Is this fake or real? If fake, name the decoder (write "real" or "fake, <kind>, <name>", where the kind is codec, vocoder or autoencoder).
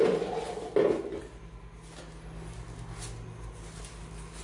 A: real